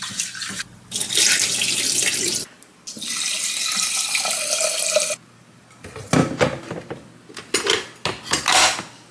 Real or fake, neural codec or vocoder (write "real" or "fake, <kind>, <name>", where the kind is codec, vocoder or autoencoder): real